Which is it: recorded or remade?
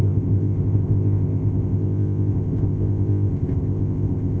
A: remade